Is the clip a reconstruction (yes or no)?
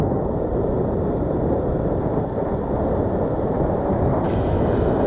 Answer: no